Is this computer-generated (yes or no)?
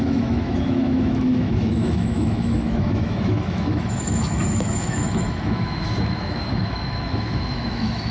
yes